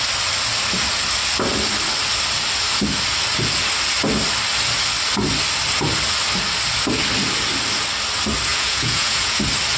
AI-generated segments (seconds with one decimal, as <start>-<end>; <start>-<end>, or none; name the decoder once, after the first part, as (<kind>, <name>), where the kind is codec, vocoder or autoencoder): 8.5-9.4 (vocoder, Vocos)